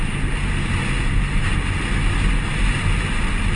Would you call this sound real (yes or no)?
yes